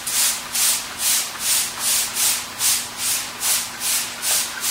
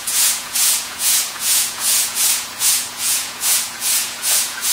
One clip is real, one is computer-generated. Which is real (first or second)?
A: first